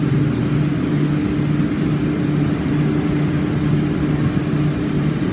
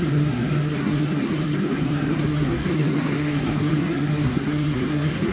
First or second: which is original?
first